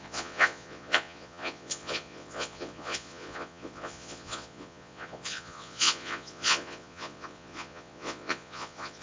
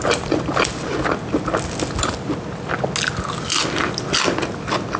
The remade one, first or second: first